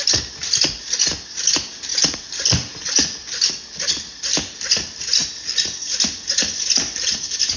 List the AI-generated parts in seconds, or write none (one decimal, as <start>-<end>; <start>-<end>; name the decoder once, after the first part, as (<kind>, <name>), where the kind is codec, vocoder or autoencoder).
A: none